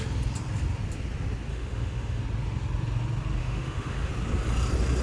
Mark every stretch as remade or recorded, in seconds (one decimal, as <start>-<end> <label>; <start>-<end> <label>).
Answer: 0.0-1.5 recorded; 1.5-2.2 remade; 2.2-3.4 recorded; 3.4-4.1 remade; 4.1-5.0 recorded